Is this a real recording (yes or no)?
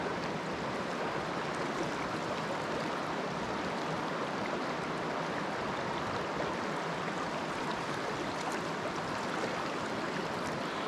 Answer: yes